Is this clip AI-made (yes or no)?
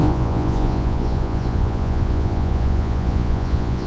yes